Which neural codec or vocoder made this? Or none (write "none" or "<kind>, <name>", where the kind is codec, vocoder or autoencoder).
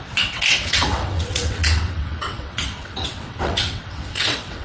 vocoder, WaveNeXt